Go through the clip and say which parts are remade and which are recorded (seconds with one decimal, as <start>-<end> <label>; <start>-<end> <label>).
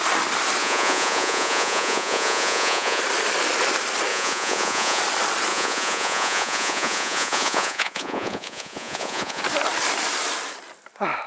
0.0-0.6 recorded; 0.6-3.0 remade; 3.0-4.1 recorded; 4.1-5.0 remade; 5.0-5.5 recorded; 5.5-9.4 remade; 9.4-11.3 recorded